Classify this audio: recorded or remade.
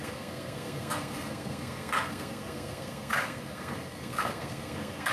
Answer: remade